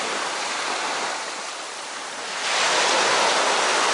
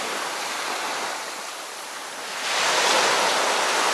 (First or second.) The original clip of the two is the second